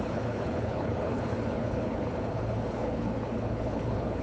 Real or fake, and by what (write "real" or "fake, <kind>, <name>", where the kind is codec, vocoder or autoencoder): fake, codec, HILCodec